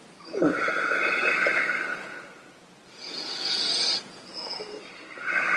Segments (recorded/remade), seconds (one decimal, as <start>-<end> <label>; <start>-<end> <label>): 0.0-1.9 recorded; 1.9-4.6 remade; 4.6-5.6 recorded